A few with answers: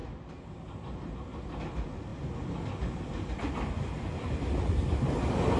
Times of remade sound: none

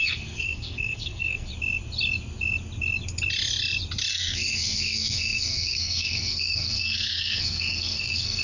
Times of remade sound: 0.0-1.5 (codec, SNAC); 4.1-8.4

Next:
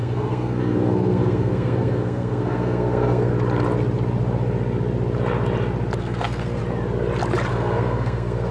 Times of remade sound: 0.0-3.3 (codec, SNAC); 6.0-6.6; 7.5-8.5